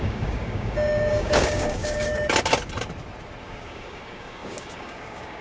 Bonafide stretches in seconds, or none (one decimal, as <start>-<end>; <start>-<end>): 2.1-3.4